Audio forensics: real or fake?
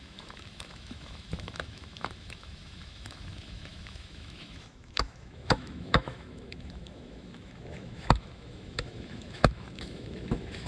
fake